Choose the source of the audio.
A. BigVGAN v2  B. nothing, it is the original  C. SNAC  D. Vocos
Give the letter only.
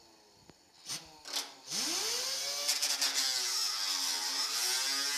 B